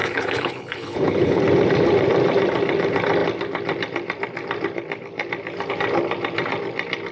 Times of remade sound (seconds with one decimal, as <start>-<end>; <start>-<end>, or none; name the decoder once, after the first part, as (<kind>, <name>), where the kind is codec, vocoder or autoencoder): 0.0-1.4 (codec, HILCodec)